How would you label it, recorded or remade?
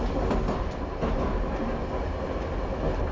recorded